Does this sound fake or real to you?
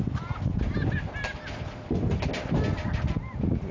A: real